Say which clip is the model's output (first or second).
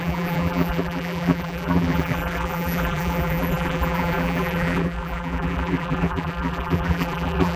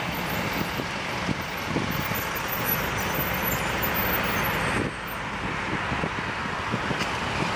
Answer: first